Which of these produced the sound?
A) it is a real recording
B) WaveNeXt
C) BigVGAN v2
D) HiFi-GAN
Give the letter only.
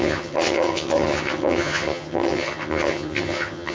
D